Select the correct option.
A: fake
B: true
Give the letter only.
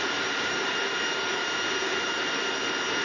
A